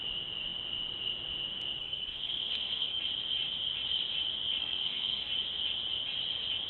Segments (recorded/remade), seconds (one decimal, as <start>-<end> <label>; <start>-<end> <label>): 0.0-1.8 recorded; 1.8-3.0 remade; 3.0-4.6 recorded; 4.6-5.3 remade; 5.3-6.7 recorded